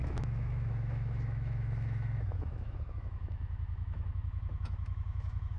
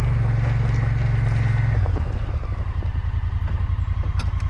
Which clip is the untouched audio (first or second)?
second